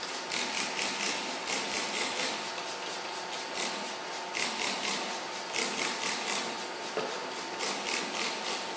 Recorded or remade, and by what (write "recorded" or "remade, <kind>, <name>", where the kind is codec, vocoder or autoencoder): recorded